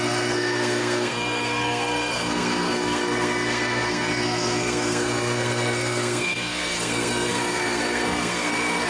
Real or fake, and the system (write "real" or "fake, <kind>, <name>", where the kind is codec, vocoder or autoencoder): fake, codec, SNAC